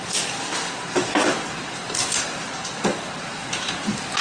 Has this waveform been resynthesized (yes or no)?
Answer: no